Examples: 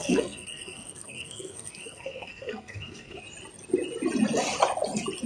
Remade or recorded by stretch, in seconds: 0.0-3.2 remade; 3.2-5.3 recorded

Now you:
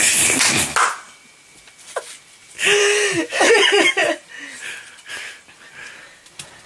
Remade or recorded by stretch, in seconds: 0.0-2.8 recorded; 2.8-3.5 remade; 3.5-6.7 recorded

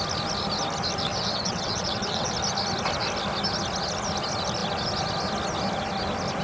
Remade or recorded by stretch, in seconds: 0.0-1.1 recorded; 1.1-2.3 remade; 2.3-6.4 recorded

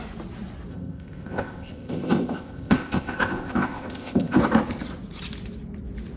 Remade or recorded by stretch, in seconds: 0.0-0.7 recorded; 0.7-4.4 remade; 4.4-6.2 recorded

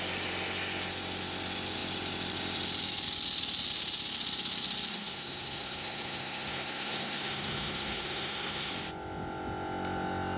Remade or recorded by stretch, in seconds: 0.0-4.9 recorded; 4.9-8.7 remade; 8.7-10.4 recorded

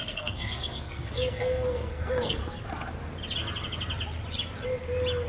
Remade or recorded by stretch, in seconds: 0.0-2.4 remade; 2.4-5.3 recorded

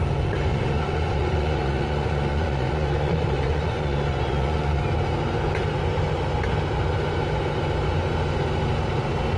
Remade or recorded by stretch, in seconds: 0.0-0.5 recorded; 0.5-4.8 remade; 4.8-9.4 recorded

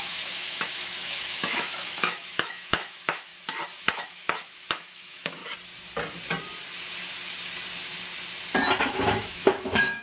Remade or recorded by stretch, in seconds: 0.0-3.3 remade; 3.3-3.8 recorded; 3.8-5.4 remade; 5.4-8.8 recorded; 8.8-10.0 remade